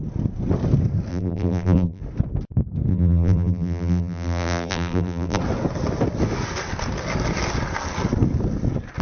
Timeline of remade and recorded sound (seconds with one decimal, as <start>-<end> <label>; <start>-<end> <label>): 0.0-1.1 recorded; 1.1-2.0 remade; 2.0-2.9 recorded; 2.9-5.4 remade; 5.4-9.0 recorded